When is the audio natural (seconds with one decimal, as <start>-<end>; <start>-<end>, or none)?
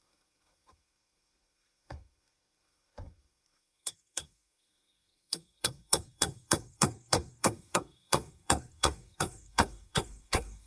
none